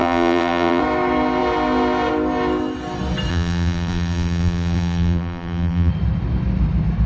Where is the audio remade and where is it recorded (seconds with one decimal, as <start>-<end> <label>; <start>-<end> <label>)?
0.0-0.8 remade; 0.8-3.3 recorded; 3.3-5.9 remade; 5.9-7.1 recorded